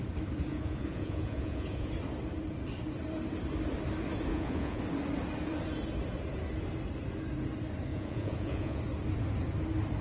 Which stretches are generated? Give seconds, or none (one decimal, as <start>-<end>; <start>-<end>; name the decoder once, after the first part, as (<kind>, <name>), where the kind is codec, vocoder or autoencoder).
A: 0.5-1.9 (vocoder, Vocos); 4.3-4.8; 7.9-8.8